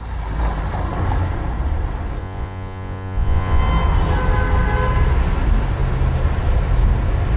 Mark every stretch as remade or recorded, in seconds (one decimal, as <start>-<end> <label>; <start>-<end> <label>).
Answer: 0.0-2.2 recorded; 2.2-3.6 remade; 3.6-7.4 recorded